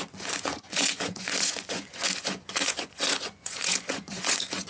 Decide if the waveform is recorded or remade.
remade